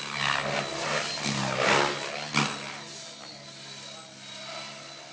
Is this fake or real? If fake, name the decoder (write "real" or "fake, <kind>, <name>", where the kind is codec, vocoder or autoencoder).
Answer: real